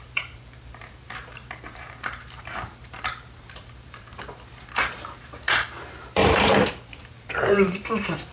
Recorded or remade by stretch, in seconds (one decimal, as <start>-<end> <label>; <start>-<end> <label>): 0.0-8.3 remade